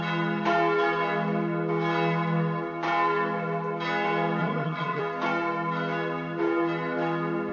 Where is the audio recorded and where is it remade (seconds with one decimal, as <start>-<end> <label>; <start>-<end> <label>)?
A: 0.0-4.4 recorded; 4.4-5.0 remade; 5.0-7.5 recorded

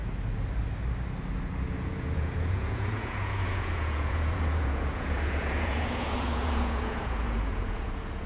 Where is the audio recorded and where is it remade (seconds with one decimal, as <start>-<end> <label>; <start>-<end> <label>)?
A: 0.0-1.4 recorded; 1.4-8.3 remade

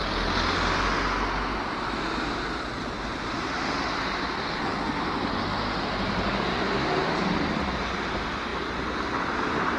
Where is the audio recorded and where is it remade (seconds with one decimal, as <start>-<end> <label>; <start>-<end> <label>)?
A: 0.0-1.7 recorded; 1.7-9.8 remade

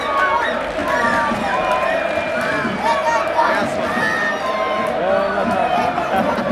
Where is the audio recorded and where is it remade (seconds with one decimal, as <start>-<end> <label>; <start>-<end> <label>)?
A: 0.0-6.5 recorded

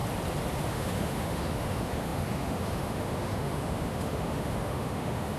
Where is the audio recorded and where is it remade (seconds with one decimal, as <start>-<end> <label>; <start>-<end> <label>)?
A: 0.0-0.7 recorded; 0.7-5.4 remade